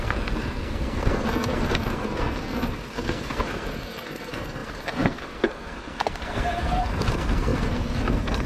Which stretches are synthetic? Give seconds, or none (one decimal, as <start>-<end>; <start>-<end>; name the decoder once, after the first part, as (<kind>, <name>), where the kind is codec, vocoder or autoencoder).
0.0-8.5 (codec, SNAC)